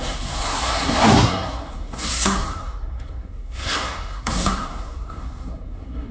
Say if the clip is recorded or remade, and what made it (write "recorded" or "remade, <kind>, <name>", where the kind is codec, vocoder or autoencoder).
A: remade, codec, SNAC